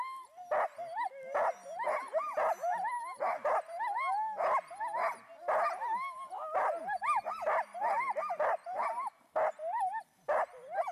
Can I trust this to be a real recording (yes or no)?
yes